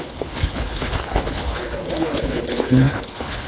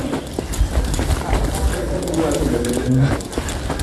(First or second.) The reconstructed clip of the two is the first